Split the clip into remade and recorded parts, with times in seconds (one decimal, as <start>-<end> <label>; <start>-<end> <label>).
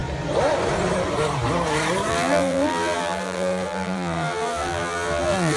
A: 0.0-2.1 recorded; 2.1-5.6 remade